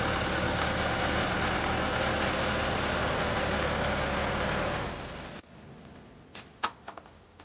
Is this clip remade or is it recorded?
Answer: recorded